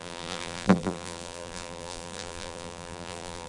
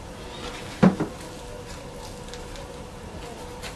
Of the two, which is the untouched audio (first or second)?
second